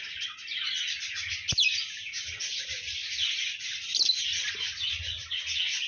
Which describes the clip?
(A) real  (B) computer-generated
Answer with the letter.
A